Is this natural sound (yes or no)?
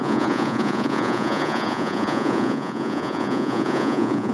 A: no